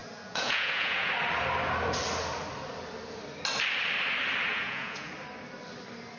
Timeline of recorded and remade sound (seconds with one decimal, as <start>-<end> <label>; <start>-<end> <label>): 0.0-1.1 remade; 1.1-4.5 recorded; 4.5-5.1 remade; 5.1-6.2 recorded